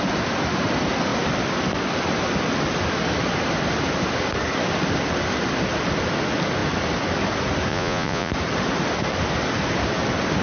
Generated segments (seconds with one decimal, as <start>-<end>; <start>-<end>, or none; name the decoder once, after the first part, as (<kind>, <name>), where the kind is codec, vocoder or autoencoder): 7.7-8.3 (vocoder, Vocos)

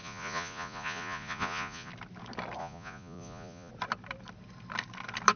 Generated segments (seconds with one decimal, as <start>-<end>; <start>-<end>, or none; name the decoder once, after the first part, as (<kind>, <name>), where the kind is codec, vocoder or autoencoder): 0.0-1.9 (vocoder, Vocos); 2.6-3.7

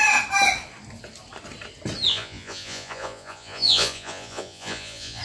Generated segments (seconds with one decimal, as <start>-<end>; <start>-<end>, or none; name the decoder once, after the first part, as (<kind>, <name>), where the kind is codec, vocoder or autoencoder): 2.1-5.2 (vocoder, Vocos)